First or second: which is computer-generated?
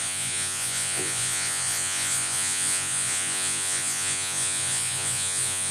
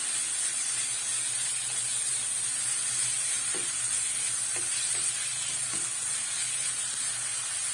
first